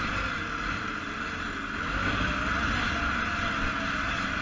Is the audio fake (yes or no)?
no